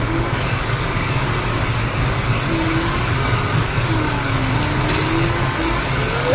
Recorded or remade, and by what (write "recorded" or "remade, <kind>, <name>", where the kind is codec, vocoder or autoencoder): remade, codec, DAC